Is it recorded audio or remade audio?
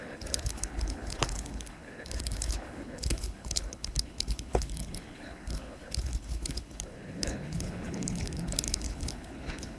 remade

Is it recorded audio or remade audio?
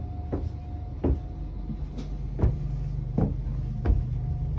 recorded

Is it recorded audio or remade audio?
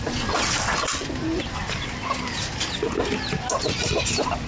recorded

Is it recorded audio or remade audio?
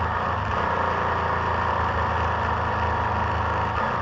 recorded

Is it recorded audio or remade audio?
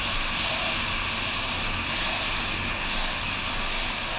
recorded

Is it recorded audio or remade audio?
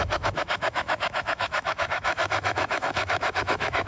remade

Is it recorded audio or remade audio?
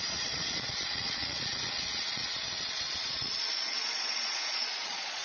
remade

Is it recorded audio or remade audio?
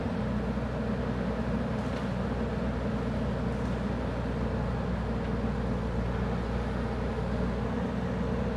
recorded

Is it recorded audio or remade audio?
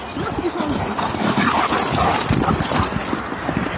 recorded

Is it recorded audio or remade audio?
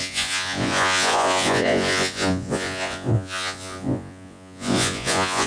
remade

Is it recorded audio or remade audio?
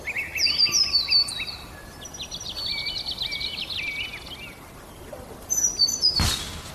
recorded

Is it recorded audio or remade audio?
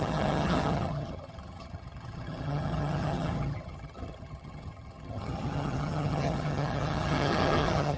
remade